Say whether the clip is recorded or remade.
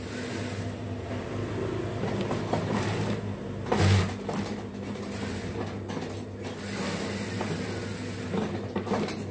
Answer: recorded